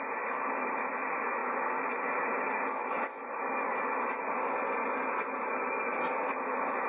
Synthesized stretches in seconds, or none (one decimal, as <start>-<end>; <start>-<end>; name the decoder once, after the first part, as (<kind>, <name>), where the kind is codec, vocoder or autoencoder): none